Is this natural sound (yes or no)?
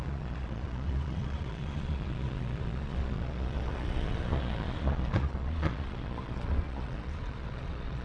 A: no